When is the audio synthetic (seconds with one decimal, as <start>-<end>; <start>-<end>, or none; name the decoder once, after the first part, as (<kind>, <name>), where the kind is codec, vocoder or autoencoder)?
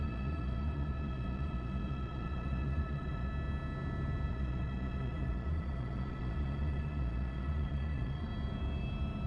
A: 0.0-3.3 (vocoder, Vocos); 4.3-8.3